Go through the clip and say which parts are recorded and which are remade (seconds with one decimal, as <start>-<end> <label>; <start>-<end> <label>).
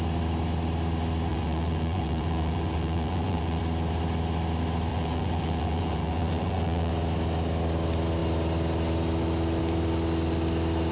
0.0-1.3 recorded; 1.3-3.6 remade; 3.6-4.9 recorded; 4.9-6.9 remade; 6.9-10.9 recorded